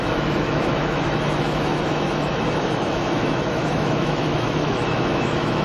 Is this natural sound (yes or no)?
no